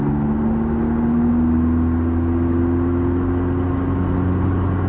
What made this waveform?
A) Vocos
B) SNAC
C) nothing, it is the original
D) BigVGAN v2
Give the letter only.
C